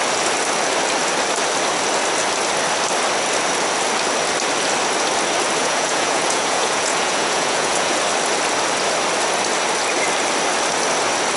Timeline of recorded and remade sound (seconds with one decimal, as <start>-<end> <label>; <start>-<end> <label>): 0.0-5.6 recorded; 5.6-8.0 remade; 8.0-11.4 recorded